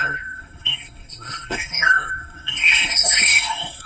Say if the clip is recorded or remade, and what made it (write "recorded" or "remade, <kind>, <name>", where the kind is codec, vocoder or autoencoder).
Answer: remade, codec, SNAC